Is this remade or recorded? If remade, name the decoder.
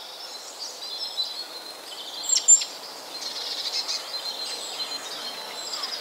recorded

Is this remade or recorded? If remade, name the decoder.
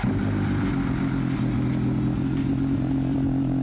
recorded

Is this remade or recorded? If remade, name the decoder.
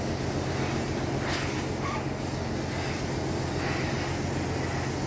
recorded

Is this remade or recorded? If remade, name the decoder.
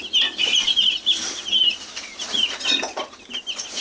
remade, vocoder, BigVGAN v2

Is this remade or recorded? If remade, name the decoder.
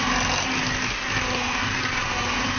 recorded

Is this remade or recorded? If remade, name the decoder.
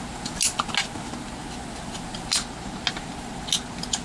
recorded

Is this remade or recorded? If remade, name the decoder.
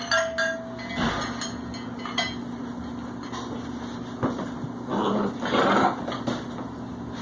recorded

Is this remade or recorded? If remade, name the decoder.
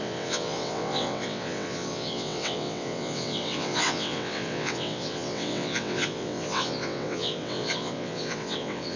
remade, vocoder, WaveNeXt